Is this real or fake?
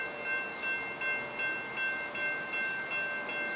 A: real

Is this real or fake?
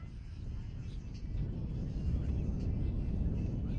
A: real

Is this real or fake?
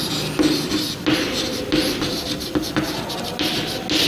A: real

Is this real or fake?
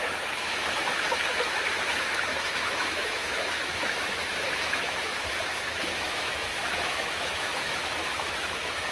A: fake